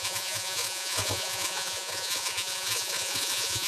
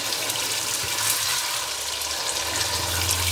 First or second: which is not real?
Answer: first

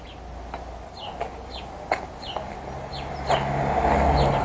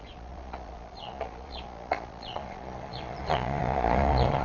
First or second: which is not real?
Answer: second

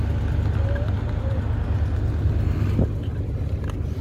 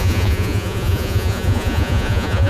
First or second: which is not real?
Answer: second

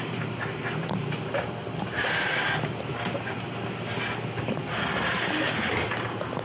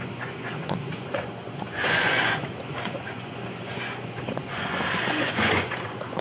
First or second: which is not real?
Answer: second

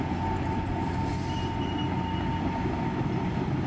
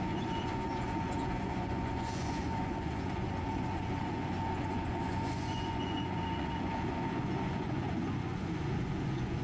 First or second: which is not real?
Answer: second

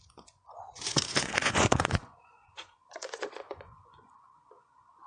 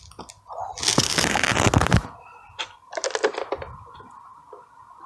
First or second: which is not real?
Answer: first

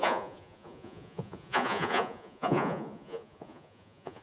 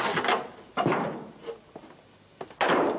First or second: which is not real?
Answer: first